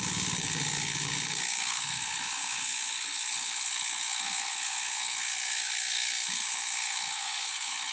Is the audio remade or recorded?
remade